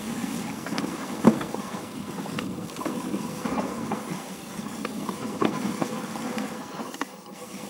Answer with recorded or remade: remade